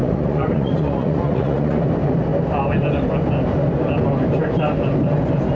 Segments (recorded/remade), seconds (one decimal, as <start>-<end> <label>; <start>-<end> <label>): 0.0-1.8 remade; 1.8-5.5 recorded